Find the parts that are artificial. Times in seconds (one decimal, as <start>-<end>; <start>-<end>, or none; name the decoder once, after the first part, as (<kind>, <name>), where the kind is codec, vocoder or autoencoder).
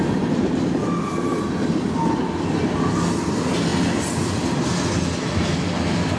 none